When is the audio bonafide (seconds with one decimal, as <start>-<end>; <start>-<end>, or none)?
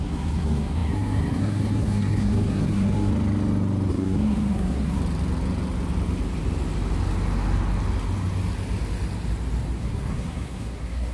3.1-3.9; 5.0-9.8